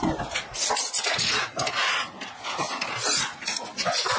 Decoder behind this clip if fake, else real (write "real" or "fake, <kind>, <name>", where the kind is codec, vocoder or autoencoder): real